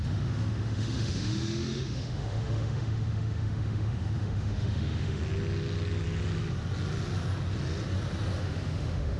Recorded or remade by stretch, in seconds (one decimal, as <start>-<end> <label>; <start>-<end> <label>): 0.0-5.2 remade; 5.2-8.4 recorded; 8.4-9.2 remade